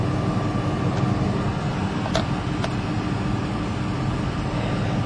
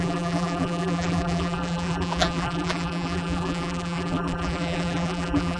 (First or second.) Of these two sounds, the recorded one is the first